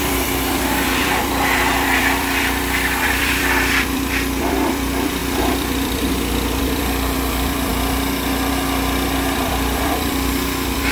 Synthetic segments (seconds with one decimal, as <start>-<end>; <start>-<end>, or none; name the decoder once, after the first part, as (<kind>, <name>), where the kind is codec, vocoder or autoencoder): 0.0-7.7 (vocoder, BigVGAN v2); 8.5-10.9